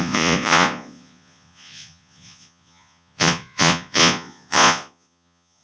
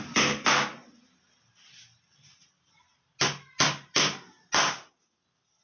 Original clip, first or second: second